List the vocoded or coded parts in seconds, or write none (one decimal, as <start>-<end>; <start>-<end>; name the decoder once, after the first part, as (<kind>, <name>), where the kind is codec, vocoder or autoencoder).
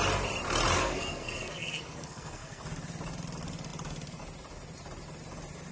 0.8-2.6 (codec, SNAC)